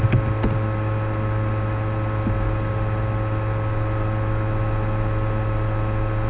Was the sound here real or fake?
real